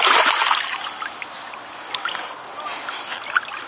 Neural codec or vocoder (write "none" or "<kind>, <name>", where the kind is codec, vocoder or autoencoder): none